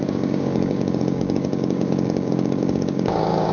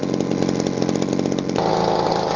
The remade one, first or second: first